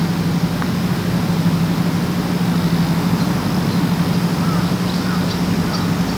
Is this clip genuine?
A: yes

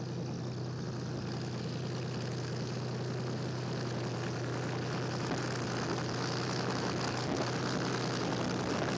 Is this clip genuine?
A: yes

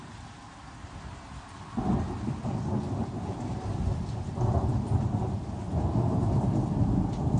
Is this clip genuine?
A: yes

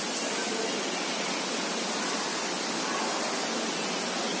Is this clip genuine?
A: yes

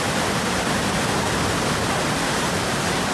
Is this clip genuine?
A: yes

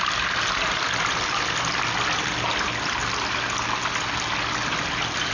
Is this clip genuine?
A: yes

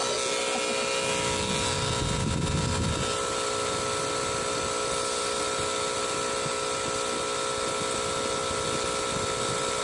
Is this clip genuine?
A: yes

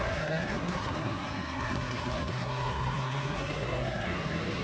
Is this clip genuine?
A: no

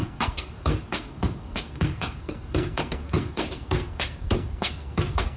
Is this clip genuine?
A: no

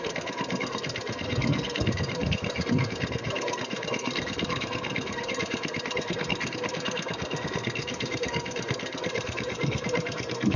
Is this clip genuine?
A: no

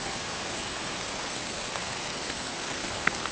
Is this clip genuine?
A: no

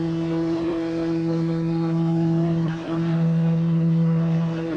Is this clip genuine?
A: no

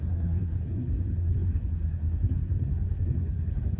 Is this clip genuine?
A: no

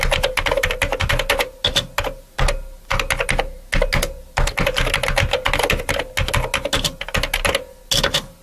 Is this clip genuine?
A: yes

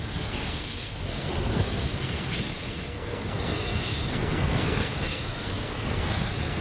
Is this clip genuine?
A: no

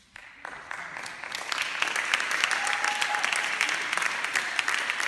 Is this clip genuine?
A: yes